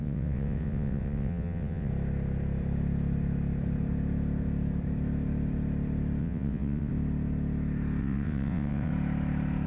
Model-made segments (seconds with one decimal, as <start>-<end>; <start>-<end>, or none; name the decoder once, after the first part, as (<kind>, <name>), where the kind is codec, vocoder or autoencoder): 0.0-1.9 (vocoder, WaveNeXt); 6.2-6.9; 8.0-8.9